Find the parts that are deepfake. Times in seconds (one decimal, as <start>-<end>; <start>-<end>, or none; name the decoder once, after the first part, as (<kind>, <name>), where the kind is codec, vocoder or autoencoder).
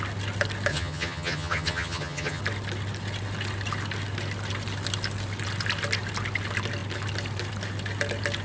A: 0.7-2.4 (vocoder, HiFi-GAN)